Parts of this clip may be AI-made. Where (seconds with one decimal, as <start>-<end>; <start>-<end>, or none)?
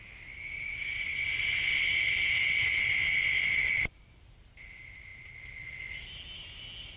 none